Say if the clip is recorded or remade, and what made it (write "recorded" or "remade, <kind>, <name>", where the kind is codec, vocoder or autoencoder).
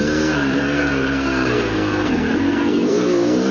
remade, codec, SNAC